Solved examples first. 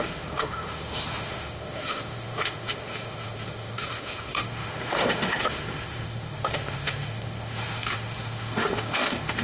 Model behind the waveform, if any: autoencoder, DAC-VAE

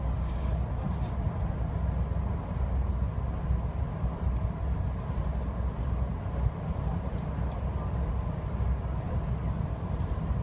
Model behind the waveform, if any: none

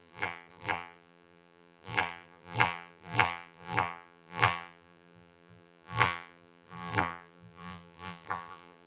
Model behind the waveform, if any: vocoder, BigVGAN v2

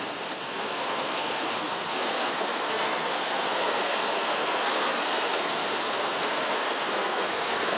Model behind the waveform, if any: codec, SNAC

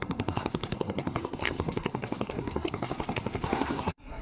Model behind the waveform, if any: codec, SNAC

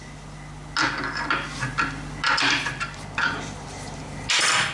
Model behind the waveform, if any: none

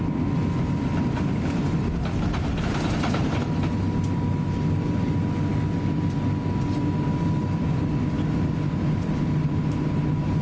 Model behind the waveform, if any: none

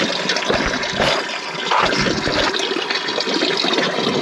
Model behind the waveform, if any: none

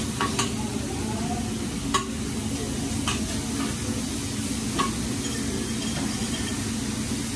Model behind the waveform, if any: none